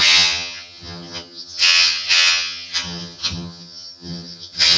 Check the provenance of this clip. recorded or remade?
remade